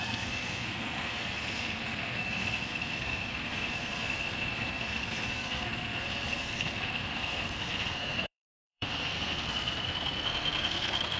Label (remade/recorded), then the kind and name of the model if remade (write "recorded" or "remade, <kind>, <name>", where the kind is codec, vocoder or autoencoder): remade, codec, SNAC